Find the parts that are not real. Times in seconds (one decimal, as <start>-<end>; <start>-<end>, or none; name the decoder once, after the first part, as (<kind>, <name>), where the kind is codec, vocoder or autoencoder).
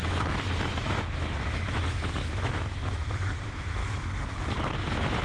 0.0-3.8 (autoencoder, DAC-VAE); 4.8-5.2